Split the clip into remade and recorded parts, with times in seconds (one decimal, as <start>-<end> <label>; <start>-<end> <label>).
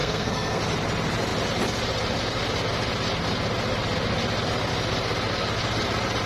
0.0-0.6 remade; 0.6-6.3 recorded